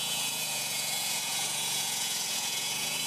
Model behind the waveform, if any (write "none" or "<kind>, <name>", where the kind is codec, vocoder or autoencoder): vocoder, Vocos